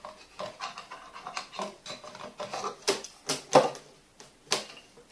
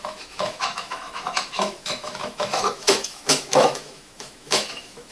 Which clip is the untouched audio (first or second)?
first